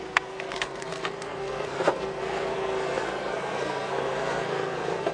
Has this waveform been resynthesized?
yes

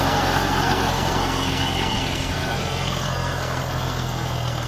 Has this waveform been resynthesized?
yes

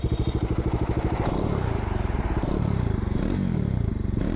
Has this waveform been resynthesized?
yes